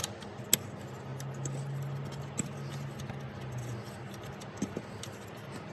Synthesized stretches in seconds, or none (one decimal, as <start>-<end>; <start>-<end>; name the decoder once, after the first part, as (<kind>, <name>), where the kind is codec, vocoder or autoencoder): none